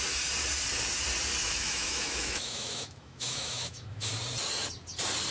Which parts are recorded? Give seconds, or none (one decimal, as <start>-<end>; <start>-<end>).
0.0-1.4; 4.1-5.3